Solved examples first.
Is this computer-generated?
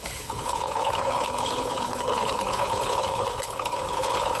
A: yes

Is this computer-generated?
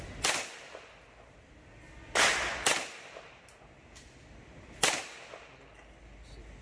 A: no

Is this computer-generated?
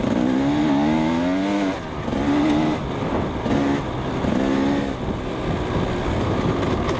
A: no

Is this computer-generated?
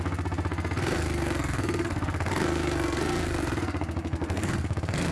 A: yes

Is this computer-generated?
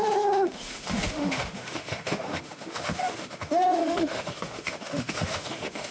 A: yes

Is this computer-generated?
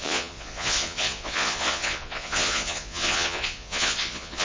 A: yes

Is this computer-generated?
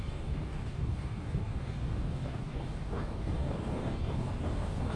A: yes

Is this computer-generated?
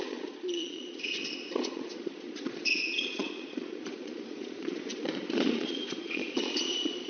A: yes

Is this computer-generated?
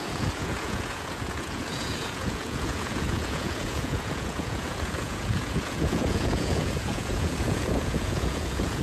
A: yes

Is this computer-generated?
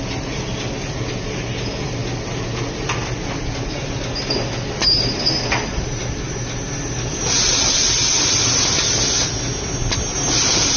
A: no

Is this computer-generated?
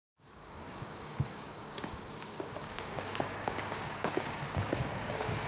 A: yes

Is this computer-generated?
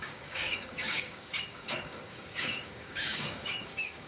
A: yes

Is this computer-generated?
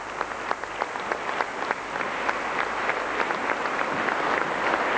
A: no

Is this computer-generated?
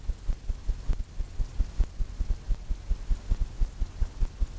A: no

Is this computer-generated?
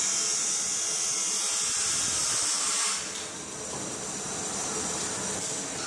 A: no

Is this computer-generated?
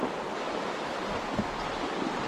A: no